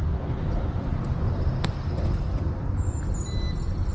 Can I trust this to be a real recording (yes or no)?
yes